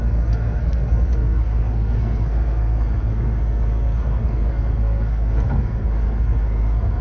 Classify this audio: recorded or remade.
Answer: remade